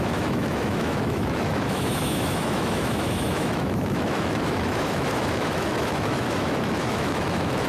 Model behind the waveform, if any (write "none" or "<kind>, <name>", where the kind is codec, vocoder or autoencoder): autoencoder, DAC-VAE